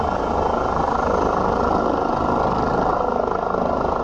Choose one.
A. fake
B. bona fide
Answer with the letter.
B